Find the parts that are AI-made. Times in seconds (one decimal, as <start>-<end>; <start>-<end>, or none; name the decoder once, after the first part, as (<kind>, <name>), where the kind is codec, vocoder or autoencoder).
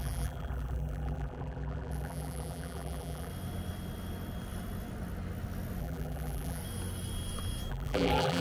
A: 0.0-3.3 (vocoder, BigVGAN v2); 5.8-6.6; 7.7-8.4